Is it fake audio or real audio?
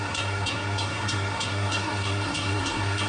fake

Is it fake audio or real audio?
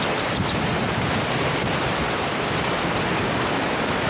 real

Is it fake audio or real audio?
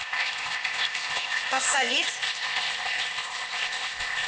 fake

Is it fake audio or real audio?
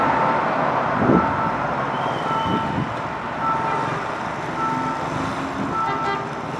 real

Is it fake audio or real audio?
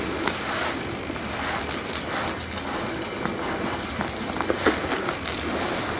real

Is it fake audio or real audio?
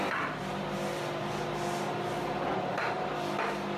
real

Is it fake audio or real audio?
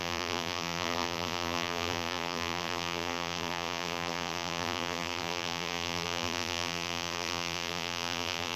fake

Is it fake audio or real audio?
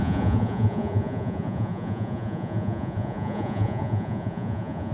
fake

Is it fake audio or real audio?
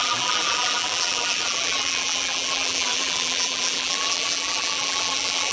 fake